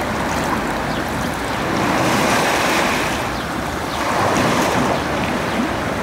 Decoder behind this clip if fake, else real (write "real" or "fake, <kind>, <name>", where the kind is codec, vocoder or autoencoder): real